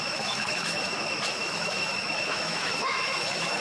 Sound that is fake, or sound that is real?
fake